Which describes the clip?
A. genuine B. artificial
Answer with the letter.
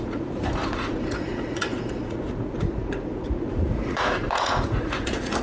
B